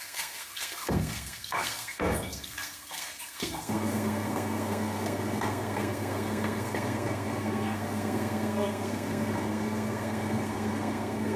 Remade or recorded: remade